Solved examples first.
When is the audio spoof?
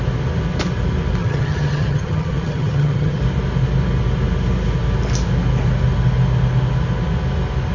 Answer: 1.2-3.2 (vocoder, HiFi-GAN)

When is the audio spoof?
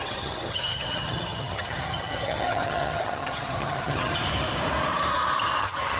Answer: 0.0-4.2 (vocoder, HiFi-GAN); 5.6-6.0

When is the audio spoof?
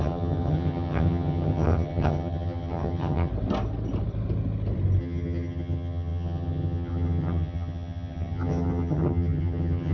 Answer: 0.0-3.3 (vocoder, HiFi-GAN); 5.0-9.9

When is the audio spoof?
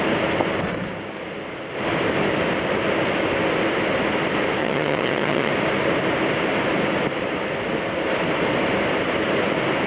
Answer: 4.6-5.5 (vocoder, HiFi-GAN)